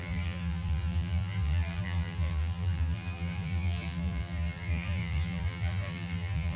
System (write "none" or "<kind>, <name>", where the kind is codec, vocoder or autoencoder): vocoder, BigVGAN v2